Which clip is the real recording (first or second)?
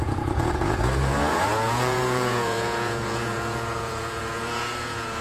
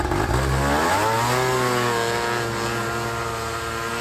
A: second